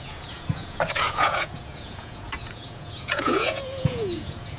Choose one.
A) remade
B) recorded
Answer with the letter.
A